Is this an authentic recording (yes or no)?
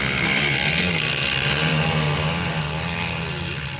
yes